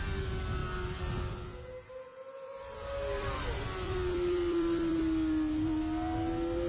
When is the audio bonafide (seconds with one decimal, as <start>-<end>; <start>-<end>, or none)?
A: 0.0-2.1; 5.0-6.7